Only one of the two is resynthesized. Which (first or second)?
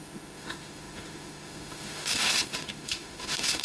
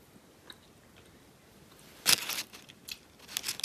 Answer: first